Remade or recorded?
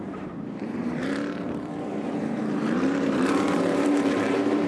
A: remade